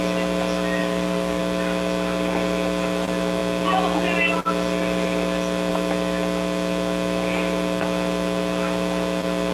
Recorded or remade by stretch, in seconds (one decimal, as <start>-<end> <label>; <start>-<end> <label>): 0.0-0.8 recorded; 0.8-1.4 remade; 1.4-9.5 recorded